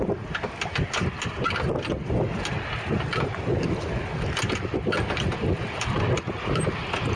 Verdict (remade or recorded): recorded